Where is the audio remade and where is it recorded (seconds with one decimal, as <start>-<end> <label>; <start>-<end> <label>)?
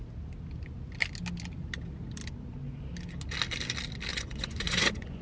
0.0-4.1 recorded; 4.1-5.2 remade